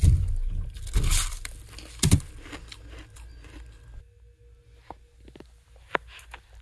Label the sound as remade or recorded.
recorded